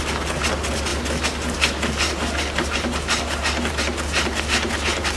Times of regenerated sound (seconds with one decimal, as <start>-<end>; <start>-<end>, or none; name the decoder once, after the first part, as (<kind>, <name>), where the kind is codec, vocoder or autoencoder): none